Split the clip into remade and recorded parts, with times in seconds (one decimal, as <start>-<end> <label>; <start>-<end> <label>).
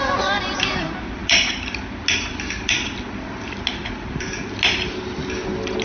0.0-5.8 recorded